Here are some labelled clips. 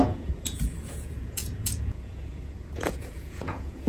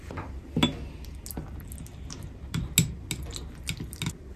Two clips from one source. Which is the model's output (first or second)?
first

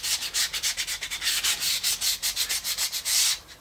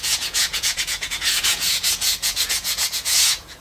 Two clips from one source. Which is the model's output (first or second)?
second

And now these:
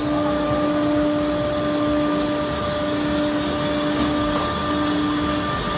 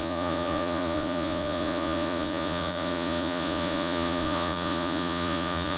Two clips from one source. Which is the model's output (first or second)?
second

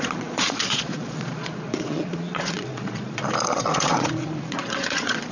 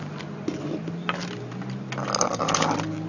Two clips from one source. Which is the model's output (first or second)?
first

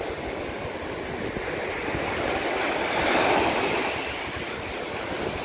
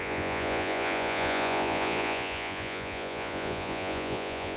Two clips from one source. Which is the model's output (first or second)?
second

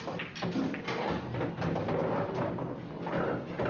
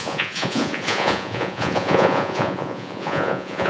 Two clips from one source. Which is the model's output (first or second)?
second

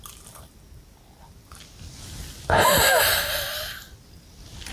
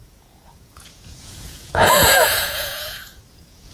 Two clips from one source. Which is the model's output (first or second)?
second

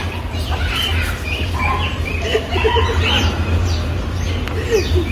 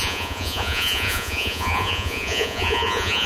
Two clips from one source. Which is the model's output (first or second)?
second